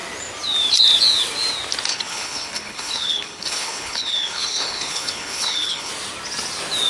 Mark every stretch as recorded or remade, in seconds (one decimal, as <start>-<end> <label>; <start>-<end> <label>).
0.0-1.9 recorded; 1.9-5.9 remade; 5.9-6.9 recorded